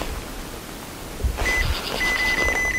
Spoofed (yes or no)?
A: no